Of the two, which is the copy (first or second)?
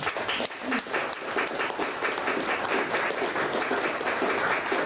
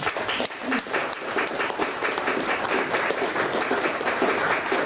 second